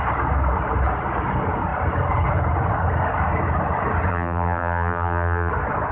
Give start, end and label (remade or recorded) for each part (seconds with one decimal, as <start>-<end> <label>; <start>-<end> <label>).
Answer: 0.0-4.1 recorded; 4.1-5.5 remade; 5.5-5.9 recorded